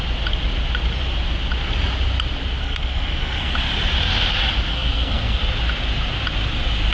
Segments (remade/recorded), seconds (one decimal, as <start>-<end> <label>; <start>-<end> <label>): 0.0-2.6 recorded; 2.6-3.5 remade; 3.5-4.7 recorded; 4.7-5.4 remade; 5.4-6.9 recorded